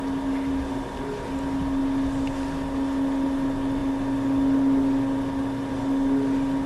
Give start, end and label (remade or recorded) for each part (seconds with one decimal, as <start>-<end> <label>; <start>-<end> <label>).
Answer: 0.0-6.7 recorded